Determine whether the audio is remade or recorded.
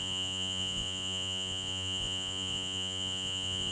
remade